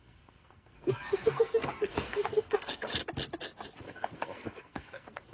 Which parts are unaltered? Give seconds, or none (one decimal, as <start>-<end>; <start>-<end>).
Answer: 3.0-3.8